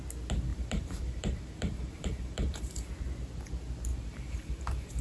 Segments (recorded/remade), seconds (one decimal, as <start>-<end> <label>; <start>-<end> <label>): 0.0-0.5 recorded; 0.5-2.9 remade; 2.9-3.9 recorded; 3.9-5.0 remade